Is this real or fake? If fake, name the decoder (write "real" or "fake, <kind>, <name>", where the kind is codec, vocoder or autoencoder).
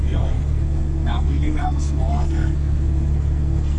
fake, codec, SNAC